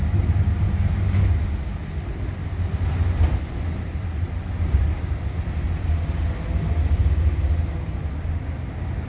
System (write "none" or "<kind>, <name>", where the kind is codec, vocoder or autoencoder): none